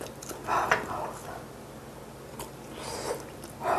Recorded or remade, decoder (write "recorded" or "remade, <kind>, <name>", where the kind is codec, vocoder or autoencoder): recorded